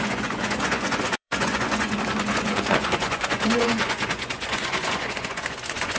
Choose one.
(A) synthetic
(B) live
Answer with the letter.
A